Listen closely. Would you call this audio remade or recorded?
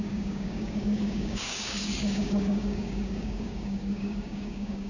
remade